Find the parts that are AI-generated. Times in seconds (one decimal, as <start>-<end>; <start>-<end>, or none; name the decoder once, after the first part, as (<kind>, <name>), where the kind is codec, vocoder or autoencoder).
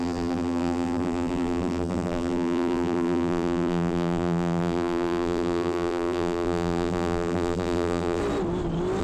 0.0-8.2 (vocoder, BigVGAN v2)